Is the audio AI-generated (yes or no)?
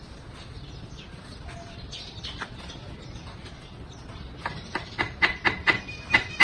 no